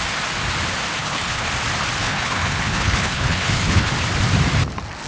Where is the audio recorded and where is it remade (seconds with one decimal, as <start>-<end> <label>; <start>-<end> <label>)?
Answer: 0.0-1.0 recorded; 1.0-1.5 remade; 1.5-2.0 recorded; 2.0-3.9 remade; 3.9-5.1 recorded